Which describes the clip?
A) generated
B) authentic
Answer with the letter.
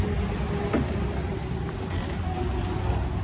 B